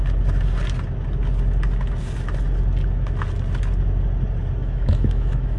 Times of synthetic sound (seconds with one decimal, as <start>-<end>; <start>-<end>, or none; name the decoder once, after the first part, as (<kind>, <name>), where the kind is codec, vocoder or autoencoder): 4.6-5.6 (autoencoder, DAC-VAE)